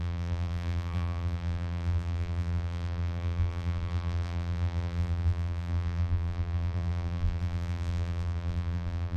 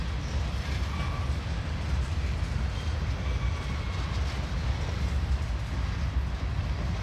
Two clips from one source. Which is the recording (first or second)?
second